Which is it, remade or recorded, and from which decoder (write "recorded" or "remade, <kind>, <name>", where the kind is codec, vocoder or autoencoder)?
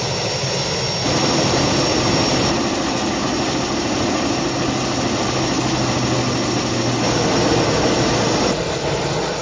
recorded